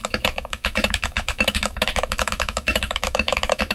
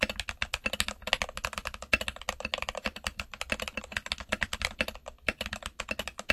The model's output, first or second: first